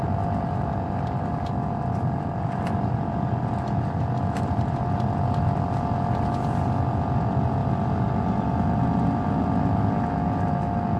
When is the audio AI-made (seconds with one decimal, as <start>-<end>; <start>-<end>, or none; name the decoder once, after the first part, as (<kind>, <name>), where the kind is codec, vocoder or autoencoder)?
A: none